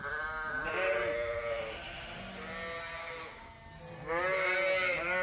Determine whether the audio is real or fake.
real